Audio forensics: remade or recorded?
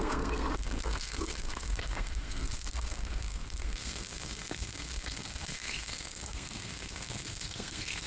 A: remade